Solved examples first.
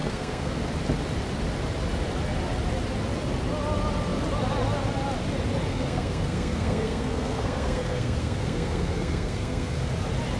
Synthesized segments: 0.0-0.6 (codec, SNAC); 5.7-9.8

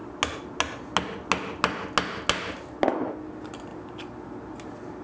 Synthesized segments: none

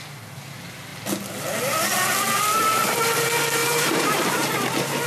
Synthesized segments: 3.6-4.3 (vocoder, BigVGAN v2)